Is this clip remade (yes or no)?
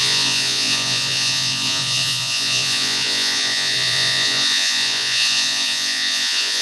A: yes